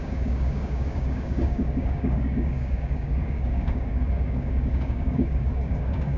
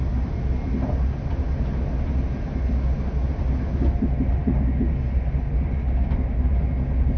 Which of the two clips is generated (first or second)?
first